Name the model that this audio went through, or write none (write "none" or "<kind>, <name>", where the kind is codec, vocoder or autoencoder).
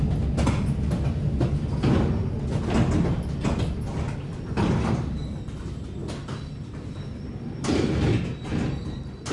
none